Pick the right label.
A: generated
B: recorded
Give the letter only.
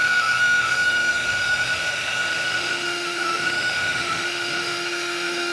A